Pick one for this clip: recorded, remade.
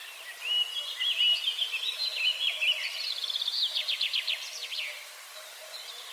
recorded